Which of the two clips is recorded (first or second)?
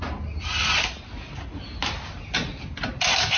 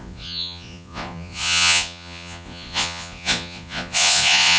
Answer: first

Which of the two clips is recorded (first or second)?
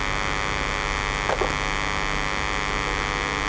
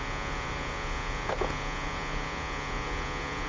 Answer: first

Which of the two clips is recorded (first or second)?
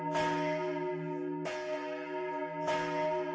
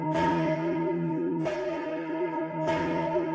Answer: first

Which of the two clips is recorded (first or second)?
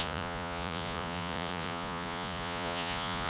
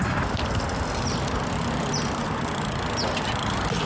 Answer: second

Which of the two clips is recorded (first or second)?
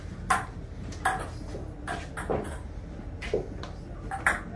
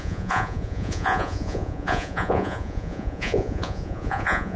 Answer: first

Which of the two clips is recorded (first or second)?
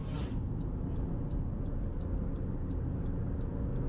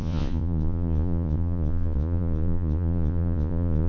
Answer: first